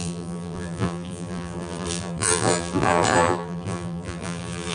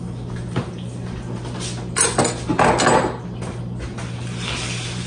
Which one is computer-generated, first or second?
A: first